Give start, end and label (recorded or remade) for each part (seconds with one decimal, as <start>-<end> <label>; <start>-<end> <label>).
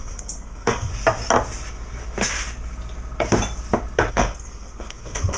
0.0-0.9 remade; 0.9-4.1 recorded; 4.1-5.4 remade